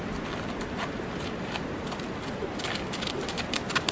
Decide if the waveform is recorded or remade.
recorded